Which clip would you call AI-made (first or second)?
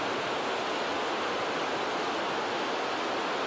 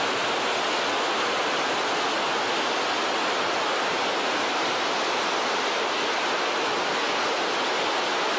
first